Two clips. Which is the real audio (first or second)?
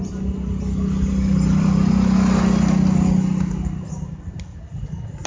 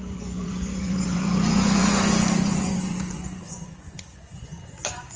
first